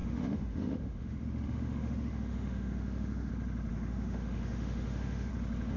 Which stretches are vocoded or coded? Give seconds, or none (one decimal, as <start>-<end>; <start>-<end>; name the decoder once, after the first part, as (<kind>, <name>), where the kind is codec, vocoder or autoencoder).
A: 0.0-3.3 (autoencoder, DAC-VAE); 3.7-5.3